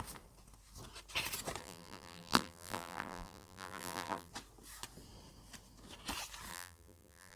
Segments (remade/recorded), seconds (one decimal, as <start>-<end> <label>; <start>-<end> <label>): 0.0-1.6 recorded; 1.6-4.3 remade; 4.3-6.5 recorded; 6.5-7.4 remade